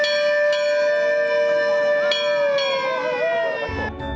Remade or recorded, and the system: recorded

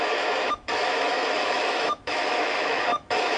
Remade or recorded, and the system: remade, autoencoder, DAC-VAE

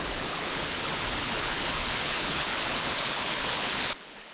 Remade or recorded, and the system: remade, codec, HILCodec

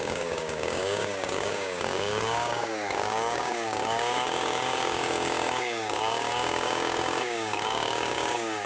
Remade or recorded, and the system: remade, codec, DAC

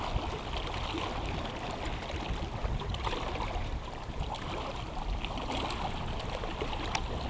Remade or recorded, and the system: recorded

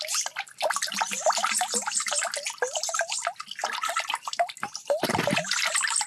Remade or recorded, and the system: recorded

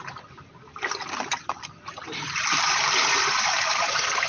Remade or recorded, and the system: recorded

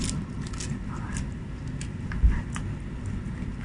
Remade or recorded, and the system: recorded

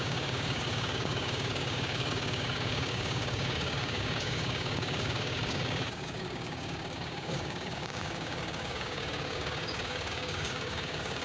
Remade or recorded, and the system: remade, codec, DAC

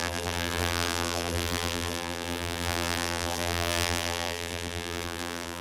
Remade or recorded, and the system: remade, vocoder, BigVGAN v2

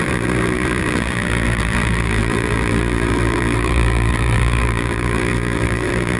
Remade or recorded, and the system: remade, vocoder, BigVGAN v2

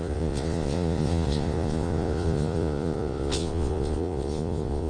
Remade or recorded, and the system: remade, vocoder, Vocos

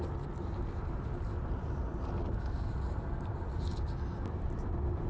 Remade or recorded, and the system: recorded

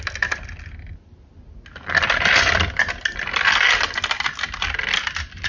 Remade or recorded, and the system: recorded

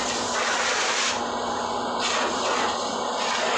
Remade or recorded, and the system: recorded